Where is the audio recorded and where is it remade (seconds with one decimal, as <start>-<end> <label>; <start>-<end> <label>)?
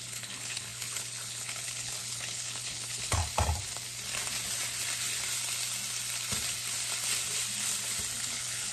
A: 0.0-3.2 remade; 3.2-8.2 recorded; 8.2-8.7 remade